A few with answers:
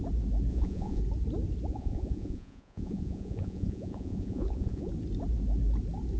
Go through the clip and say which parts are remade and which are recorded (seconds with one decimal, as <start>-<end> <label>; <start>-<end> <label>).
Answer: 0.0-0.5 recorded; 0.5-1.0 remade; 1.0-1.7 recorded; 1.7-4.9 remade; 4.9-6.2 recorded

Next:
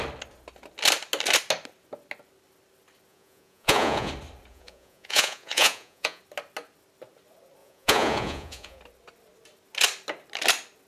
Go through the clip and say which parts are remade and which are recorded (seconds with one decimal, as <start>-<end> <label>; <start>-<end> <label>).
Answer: 0.0-3.1 recorded; 3.1-4.1 remade; 4.1-4.5 recorded; 4.5-6.2 remade; 6.2-7.6 recorded; 7.6-8.8 remade; 8.8-10.9 recorded

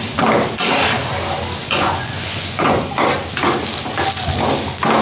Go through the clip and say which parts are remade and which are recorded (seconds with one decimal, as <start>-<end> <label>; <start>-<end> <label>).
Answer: 0.0-1.6 recorded; 1.6-2.9 remade; 2.9-5.0 recorded

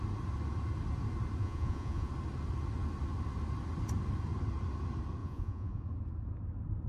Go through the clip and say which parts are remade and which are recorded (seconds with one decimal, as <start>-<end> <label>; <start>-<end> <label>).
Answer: 0.0-1.4 recorded; 1.4-2.1 remade; 2.1-5.2 recorded; 5.2-5.8 remade; 5.8-6.9 recorded

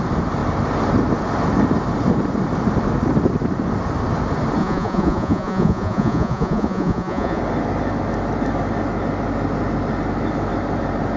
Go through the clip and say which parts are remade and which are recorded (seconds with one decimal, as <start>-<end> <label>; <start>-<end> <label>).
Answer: 0.0-4.6 recorded; 4.6-7.4 remade; 7.4-11.2 recorded